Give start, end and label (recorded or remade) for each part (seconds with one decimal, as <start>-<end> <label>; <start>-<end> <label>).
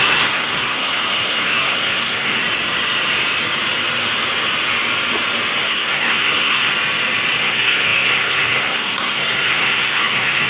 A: 0.0-2.4 remade; 2.4-5.6 recorded; 5.6-6.7 remade; 6.7-7.4 recorded; 7.4-10.5 remade